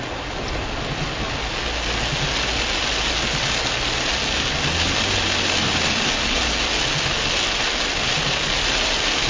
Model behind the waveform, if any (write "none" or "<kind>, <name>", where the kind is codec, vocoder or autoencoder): none